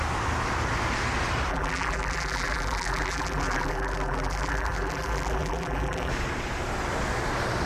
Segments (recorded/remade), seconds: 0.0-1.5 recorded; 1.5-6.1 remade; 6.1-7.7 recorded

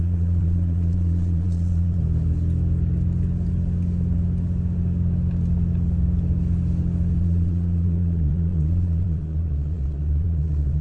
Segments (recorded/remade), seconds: 0.0-2.0 remade; 2.0-7.2 recorded; 7.2-10.8 remade

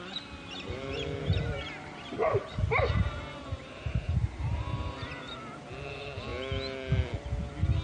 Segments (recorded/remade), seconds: 0.0-3.4 recorded; 3.4-4.9 remade; 4.9-7.8 recorded

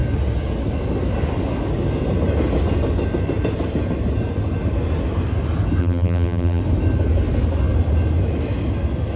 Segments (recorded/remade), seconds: 0.0-5.8 recorded; 5.8-6.6 remade; 6.6-9.2 recorded

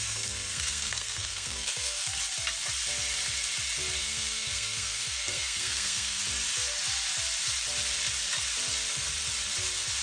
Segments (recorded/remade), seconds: 0.0-2.1 remade; 2.1-4.0 recorded; 4.0-6.2 remade; 6.2-10.0 recorded

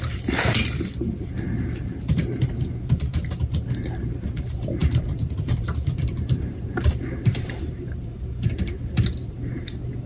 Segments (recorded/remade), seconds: 0.0-10.1 remade

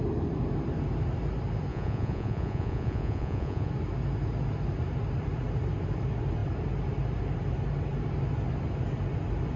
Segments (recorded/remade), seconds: 0.0-1.7 recorded; 1.7-3.7 remade; 3.7-9.6 recorded

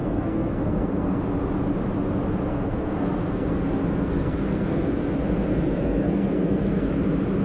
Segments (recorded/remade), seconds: 0.0-1.2 remade; 1.2-2.5 recorded; 2.5-6.9 remade; 6.9-7.4 recorded